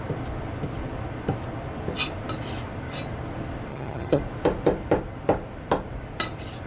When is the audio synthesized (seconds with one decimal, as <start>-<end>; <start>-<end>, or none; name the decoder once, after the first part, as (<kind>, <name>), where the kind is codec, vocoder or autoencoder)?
3.7-4.2 (vocoder, HiFi-GAN)